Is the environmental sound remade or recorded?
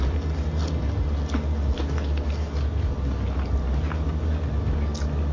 recorded